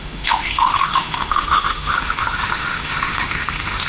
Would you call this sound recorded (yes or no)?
no